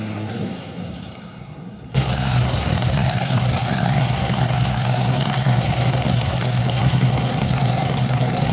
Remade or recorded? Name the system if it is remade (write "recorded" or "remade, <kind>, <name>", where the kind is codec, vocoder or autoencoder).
remade, codec, SNAC